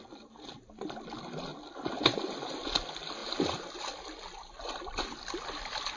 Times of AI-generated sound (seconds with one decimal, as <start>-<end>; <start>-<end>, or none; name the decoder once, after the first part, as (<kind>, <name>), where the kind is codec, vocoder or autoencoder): none